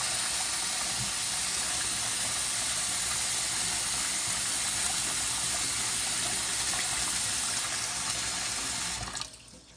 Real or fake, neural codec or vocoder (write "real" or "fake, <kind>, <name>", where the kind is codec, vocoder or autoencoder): real